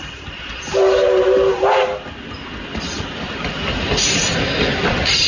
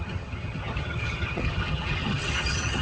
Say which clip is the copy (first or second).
second